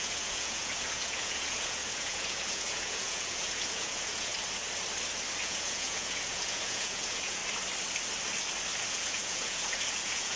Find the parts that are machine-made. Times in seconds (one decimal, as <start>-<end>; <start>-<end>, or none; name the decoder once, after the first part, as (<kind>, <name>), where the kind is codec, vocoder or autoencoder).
0.0-4.3 (vocoder, Vocos); 5.4-7.4; 8.9-10.4